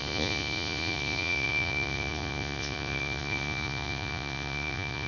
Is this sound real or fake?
fake